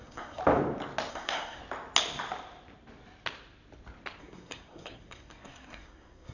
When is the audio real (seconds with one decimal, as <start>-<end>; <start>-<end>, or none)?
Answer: 0.4-1.1; 1.6-4.2